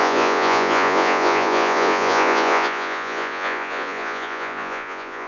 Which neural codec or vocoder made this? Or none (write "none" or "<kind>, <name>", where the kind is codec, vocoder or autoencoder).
vocoder, Vocos